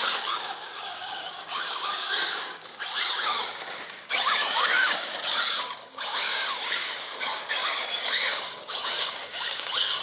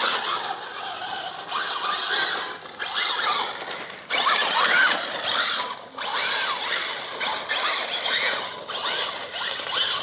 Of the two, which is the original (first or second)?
second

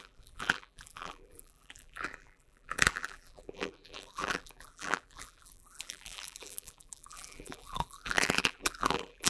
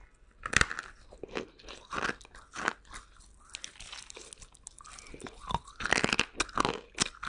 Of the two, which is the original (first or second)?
second